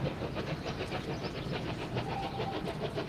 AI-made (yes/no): no